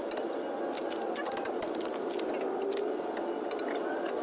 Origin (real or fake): real